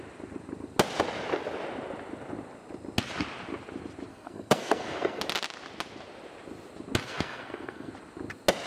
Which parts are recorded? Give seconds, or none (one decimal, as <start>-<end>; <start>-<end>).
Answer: 0.0-4.1; 5.2-7.0; 7.9-8.7